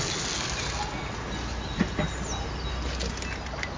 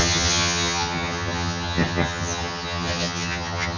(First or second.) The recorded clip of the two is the first